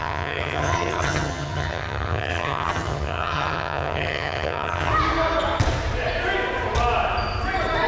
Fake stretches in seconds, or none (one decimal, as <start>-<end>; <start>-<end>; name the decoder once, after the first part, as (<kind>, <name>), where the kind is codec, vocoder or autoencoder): 0.0-4.9 (vocoder, HiFi-GAN)